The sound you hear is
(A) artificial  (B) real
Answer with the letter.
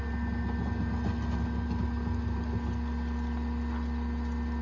B